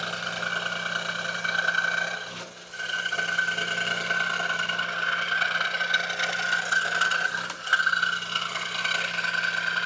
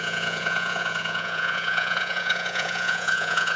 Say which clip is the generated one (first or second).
second